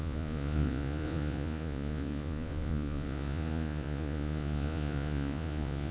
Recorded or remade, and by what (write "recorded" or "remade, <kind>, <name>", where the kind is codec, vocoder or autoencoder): remade, vocoder, Vocos